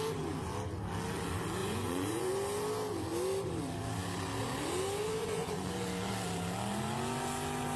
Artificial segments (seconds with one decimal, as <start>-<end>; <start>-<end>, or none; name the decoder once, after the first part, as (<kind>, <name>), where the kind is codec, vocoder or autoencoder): 1.6-2.3 (vocoder, Vocos); 5.2-5.7